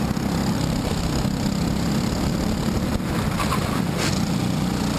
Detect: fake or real real